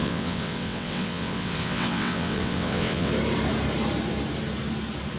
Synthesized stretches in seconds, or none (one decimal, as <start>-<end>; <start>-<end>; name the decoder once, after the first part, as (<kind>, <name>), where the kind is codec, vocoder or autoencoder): 0.0-3.1 (vocoder, WaveNeXt)